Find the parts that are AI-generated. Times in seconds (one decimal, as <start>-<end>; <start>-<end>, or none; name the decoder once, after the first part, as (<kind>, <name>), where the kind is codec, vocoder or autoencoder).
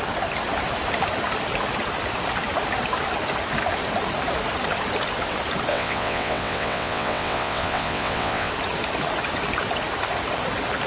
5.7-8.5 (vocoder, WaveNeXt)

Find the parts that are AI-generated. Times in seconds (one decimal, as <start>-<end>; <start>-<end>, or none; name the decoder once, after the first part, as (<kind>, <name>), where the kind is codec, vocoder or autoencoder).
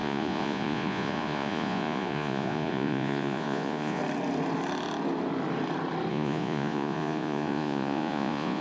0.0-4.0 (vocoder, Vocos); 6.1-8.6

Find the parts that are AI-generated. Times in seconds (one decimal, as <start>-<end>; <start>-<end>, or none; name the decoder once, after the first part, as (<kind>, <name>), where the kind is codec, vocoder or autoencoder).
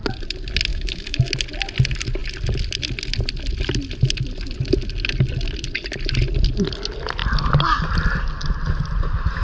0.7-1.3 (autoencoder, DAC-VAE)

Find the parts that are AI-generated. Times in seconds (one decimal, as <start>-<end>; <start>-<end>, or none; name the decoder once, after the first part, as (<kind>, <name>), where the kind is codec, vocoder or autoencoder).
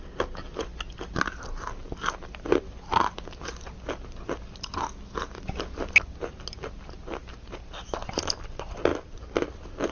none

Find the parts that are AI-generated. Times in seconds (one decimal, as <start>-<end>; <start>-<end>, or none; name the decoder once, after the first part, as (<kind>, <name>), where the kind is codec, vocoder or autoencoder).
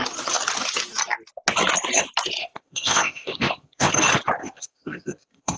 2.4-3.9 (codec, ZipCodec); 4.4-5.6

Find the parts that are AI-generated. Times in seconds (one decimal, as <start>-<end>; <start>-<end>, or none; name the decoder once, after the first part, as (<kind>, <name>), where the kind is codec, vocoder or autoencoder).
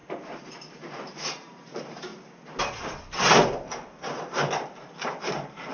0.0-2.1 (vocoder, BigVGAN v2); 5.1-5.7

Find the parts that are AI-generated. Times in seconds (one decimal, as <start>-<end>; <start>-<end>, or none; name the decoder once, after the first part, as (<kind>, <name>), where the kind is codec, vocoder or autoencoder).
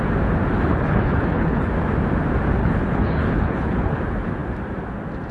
0.7-1.7 (codec, HILCodec); 2.6-4.0